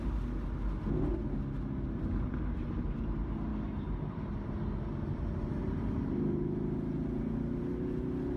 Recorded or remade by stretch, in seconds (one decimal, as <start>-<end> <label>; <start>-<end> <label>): 0.0-8.4 recorded